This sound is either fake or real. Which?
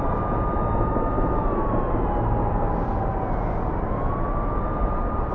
real